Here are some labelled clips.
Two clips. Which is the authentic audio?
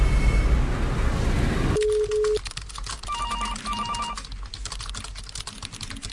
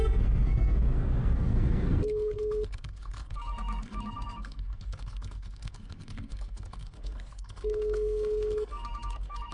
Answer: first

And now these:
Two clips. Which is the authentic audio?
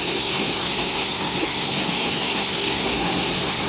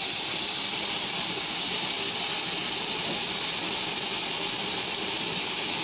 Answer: second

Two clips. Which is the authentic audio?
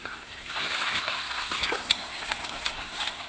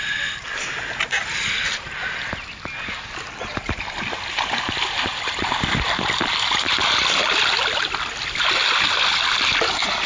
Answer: second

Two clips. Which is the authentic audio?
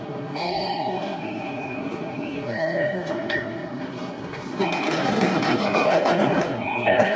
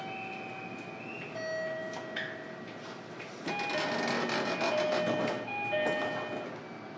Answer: second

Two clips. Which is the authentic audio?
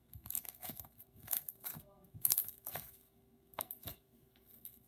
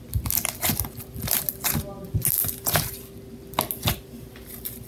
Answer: second